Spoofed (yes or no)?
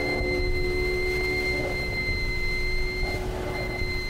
no